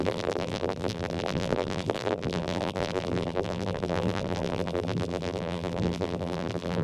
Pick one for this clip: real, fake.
fake